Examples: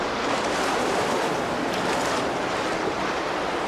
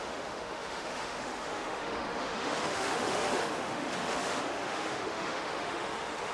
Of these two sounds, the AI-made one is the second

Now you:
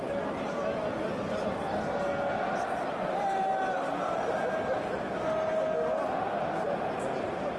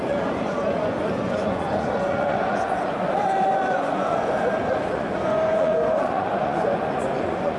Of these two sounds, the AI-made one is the second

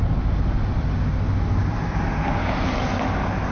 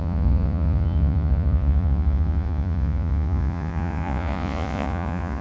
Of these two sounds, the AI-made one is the second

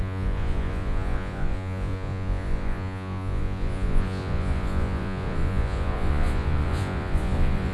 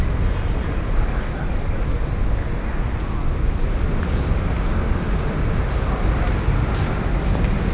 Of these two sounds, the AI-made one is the first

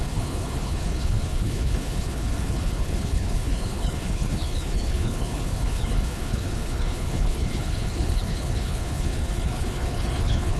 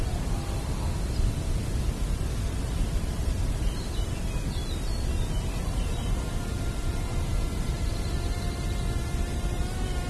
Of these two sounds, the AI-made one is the first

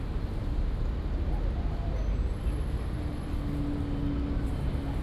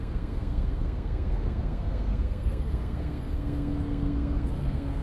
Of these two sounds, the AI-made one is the second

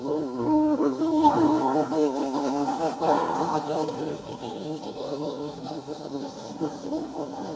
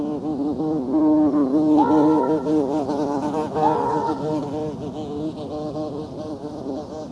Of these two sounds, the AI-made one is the first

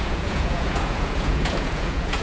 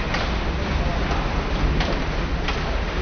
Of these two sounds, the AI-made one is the first